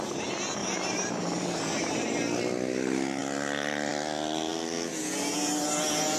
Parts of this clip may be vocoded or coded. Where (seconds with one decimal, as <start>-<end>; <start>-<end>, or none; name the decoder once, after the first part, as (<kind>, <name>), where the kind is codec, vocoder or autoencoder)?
0.6-1.9 (vocoder, BigVGAN v2); 3.2-3.9; 4.5-5.0

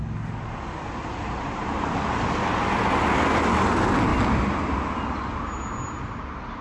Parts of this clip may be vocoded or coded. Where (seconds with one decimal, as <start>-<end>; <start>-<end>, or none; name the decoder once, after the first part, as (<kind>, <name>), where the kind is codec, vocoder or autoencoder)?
1.1-1.8 (vocoder, BigVGAN v2)

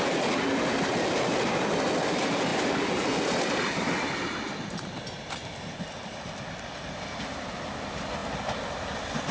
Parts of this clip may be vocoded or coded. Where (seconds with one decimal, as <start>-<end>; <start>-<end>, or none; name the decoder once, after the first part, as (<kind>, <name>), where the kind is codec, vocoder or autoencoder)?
2.5-7.3 (vocoder, BigVGAN v2)

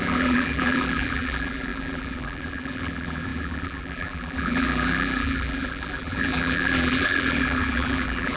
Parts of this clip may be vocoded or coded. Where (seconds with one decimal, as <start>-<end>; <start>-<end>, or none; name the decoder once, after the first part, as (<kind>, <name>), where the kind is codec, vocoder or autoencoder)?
0.0-8.4 (vocoder, BigVGAN v2)

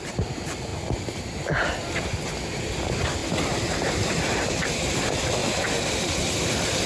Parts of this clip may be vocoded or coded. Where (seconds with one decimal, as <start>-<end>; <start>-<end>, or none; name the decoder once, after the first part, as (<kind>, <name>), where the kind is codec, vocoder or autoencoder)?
0.0-0.7 (vocoder, BigVGAN v2); 1.9-5.4; 6.4-6.9

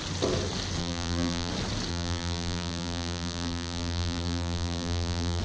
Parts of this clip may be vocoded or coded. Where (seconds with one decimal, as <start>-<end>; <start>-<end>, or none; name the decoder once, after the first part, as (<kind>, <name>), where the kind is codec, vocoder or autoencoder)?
0.8-1.5 (vocoder, BigVGAN v2); 1.9-5.4

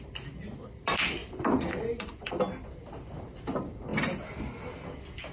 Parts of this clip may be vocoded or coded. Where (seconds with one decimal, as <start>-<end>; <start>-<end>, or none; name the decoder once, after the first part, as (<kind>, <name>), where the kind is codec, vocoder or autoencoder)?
1.2-2.3 (vocoder, BigVGAN v2)

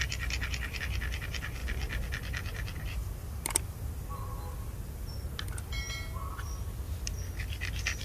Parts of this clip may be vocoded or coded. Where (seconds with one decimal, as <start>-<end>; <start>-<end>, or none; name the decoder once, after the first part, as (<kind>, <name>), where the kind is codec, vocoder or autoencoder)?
none